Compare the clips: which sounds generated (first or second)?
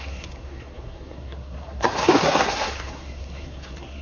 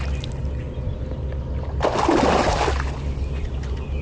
first